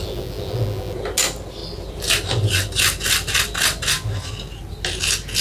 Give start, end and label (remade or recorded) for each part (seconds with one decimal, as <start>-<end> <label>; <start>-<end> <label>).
0.0-5.4 recorded